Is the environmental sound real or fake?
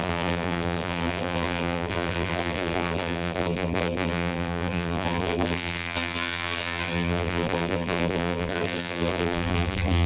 fake